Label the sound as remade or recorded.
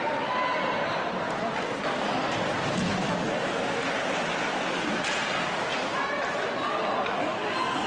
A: recorded